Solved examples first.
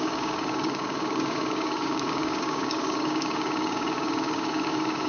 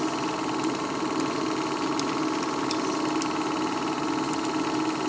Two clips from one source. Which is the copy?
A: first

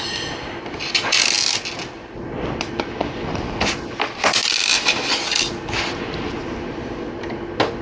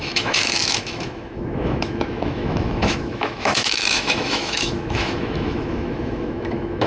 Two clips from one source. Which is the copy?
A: second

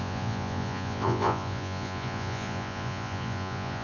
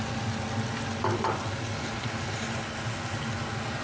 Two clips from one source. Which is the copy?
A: first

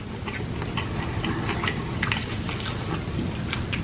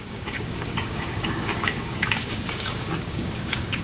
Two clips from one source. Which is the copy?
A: second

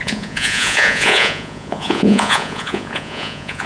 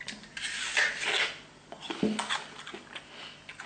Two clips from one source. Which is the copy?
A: first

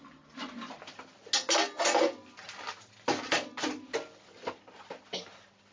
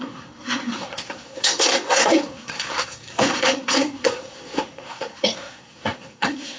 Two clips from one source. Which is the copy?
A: second